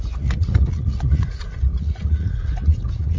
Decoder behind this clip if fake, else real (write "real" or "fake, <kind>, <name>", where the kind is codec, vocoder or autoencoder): fake, vocoder, Vocos